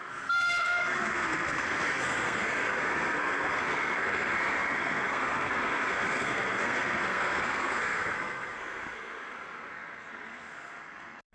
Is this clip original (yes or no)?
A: no